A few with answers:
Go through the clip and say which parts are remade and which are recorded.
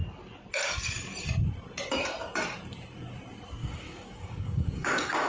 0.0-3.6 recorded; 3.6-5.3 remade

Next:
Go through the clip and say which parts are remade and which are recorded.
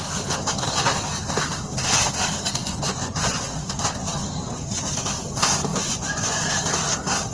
0.0-2.6 recorded; 2.6-3.4 remade; 3.4-5.7 recorded; 5.7-6.5 remade; 6.5-7.3 recorded